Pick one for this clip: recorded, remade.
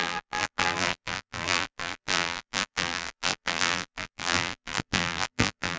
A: remade